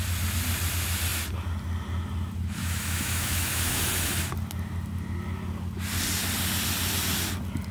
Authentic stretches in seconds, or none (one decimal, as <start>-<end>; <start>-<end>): 0.0-2.6; 3.8-7.7